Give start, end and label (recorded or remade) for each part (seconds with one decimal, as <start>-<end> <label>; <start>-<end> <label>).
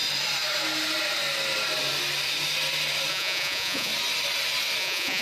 0.0-3.1 recorded; 3.1-3.9 remade; 3.9-4.8 recorded; 4.8-5.2 remade